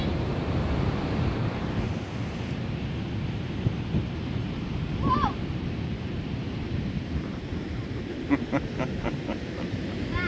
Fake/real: fake